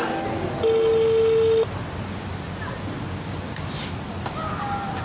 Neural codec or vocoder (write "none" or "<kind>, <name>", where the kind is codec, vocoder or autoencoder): none